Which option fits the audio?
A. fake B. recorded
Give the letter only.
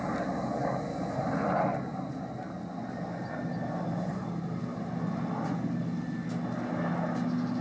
B